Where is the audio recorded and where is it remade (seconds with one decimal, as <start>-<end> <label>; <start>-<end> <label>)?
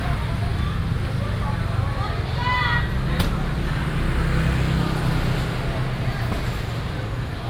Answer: 0.0-7.5 recorded